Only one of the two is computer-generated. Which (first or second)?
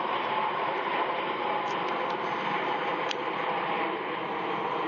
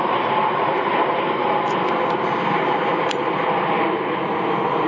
first